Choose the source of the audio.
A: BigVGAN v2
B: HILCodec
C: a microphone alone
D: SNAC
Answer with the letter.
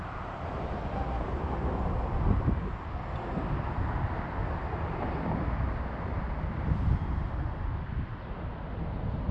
C